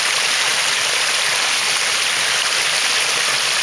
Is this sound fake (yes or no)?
no